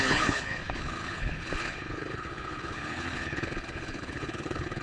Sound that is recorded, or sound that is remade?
remade